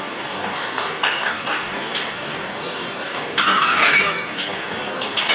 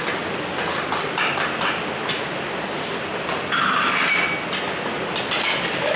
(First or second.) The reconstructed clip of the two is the first